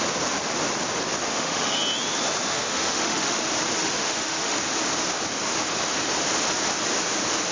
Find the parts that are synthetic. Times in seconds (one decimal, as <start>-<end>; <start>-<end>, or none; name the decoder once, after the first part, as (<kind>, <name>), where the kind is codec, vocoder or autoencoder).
1.2-1.8 (autoencoder, DAC-VAE); 2.5-3.4; 3.8-4.6